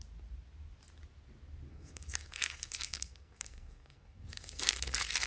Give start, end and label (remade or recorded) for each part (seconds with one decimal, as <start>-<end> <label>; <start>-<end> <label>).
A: 0.0-1.7 recorded; 1.7-5.3 remade